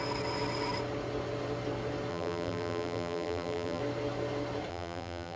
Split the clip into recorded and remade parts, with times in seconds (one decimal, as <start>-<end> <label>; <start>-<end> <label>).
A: 0.0-2.1 recorded; 2.1-3.8 remade; 3.8-4.7 recorded; 4.7-5.4 remade